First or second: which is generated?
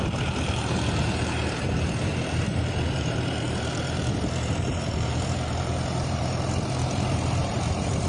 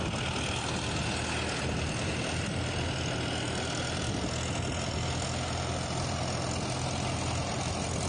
first